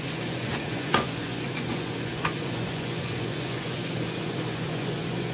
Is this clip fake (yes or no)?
yes